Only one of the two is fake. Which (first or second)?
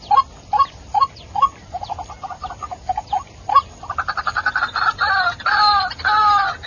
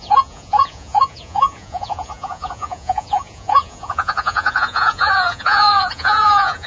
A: second